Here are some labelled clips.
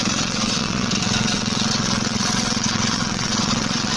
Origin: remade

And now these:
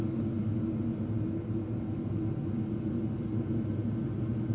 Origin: recorded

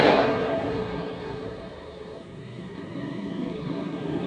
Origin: remade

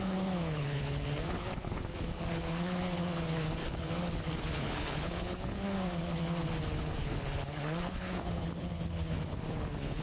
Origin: remade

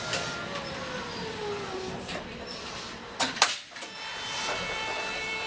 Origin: remade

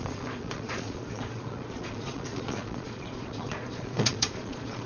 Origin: remade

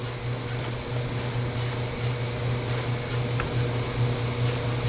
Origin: recorded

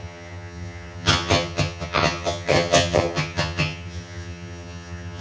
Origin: remade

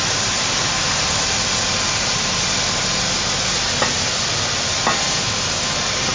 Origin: recorded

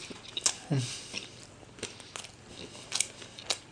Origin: recorded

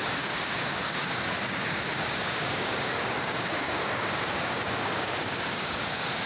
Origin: remade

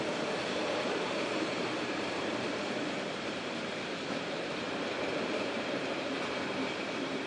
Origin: remade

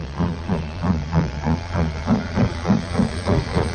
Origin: remade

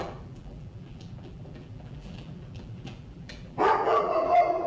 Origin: remade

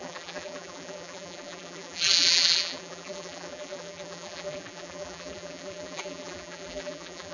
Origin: remade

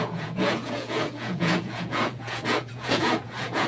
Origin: remade